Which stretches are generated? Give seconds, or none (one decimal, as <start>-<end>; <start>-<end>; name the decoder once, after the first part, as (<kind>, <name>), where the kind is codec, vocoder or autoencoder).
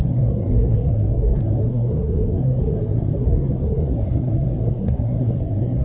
0.0-5.8 (codec, SNAC)